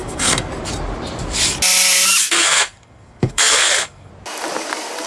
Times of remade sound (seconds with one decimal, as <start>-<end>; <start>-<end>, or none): 0.0-0.5; 2.2-4.1